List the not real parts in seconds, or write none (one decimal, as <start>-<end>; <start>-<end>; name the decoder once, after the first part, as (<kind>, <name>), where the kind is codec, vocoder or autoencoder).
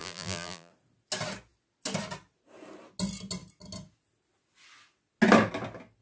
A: 0.0-0.7 (vocoder, BigVGAN v2)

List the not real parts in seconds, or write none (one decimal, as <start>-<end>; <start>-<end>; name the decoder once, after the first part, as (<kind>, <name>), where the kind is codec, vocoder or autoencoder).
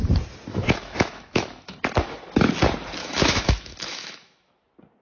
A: 0.5-1.8 (autoencoder, DAC-VAE); 3.0-4.5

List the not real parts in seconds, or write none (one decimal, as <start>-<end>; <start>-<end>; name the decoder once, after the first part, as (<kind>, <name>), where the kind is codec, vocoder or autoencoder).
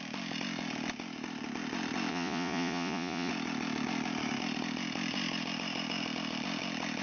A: 2.1-3.3 (vocoder, Vocos)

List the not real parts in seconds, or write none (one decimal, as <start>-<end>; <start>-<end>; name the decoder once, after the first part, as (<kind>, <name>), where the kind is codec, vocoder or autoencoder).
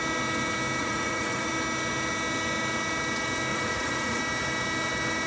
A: 0.8-1.5 (vocoder, Vocos); 3.5-4.2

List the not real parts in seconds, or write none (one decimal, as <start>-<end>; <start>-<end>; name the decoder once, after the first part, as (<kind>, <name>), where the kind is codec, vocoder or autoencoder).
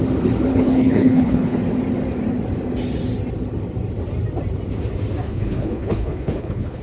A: 0.5-1.6 (codec, HILCodec); 5.2-6.8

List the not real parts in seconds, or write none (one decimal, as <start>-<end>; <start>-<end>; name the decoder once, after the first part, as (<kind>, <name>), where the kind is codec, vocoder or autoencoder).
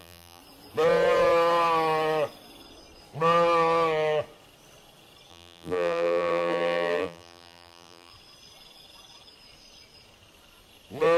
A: 0.0-0.4 (vocoder, BigVGAN v2); 5.3-8.1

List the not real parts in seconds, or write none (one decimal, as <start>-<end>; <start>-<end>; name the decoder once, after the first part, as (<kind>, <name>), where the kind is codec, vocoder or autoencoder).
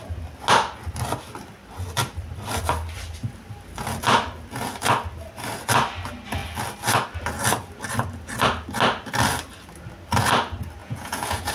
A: 10.8-11.5 (vocoder, Vocos)